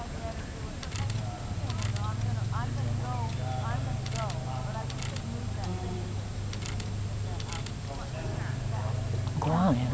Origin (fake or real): real